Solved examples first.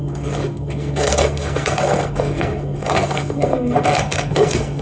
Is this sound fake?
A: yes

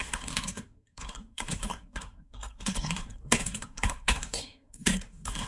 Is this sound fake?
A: yes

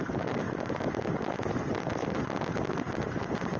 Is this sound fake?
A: no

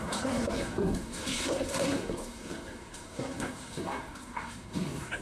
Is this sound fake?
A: yes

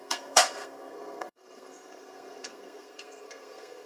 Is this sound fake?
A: yes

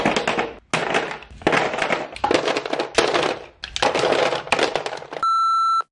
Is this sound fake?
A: no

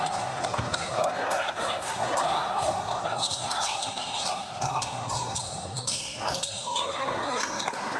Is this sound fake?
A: yes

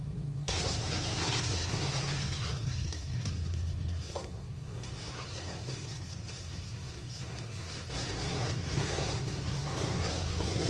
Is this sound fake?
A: yes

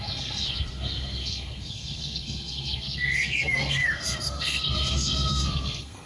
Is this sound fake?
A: yes